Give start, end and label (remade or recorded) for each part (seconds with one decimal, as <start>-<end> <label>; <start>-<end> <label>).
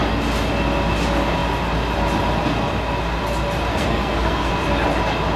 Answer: 0.0-3.7 recorded; 3.7-4.5 remade; 4.5-5.4 recorded